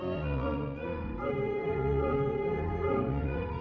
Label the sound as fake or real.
fake